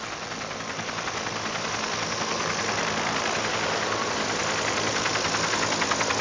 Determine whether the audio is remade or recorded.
recorded